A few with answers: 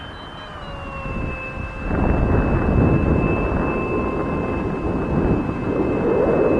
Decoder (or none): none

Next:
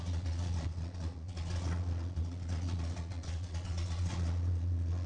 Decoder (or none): vocoder, Vocos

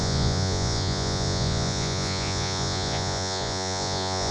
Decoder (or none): vocoder, Vocos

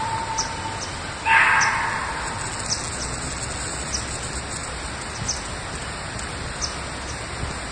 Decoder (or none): none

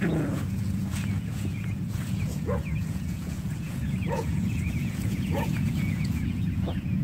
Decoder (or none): vocoder, Vocos